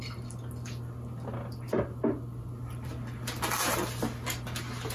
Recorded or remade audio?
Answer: recorded